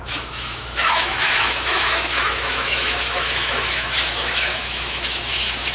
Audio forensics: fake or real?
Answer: fake